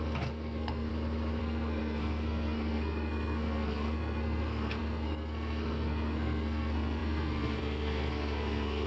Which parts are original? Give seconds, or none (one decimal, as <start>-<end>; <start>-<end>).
0.9-1.4